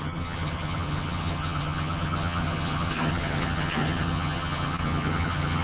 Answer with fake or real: fake